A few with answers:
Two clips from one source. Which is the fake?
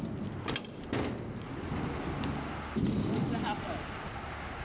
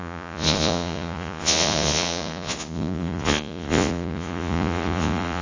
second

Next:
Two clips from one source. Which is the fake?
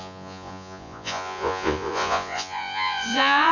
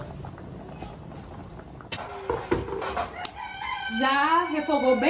first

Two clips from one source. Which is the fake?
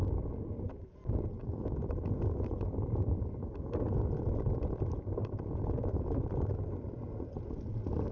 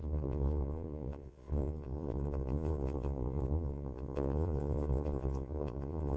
second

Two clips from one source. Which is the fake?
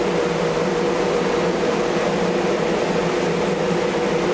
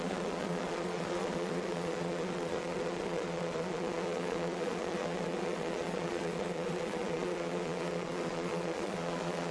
second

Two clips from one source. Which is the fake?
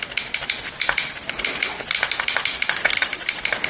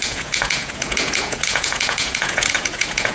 second